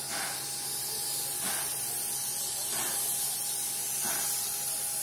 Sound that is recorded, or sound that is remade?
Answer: recorded